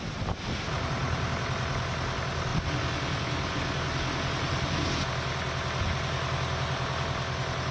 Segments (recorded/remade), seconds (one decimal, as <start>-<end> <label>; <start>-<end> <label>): 0.0-7.7 recorded